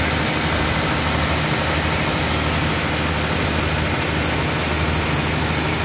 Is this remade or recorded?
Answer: recorded